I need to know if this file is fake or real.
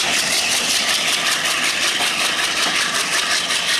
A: fake